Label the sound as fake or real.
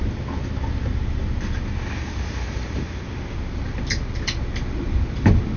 real